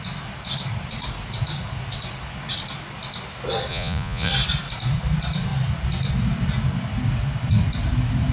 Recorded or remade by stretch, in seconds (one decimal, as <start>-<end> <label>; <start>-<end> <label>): 0.0-3.7 recorded; 3.7-4.3 remade; 4.3-8.3 recorded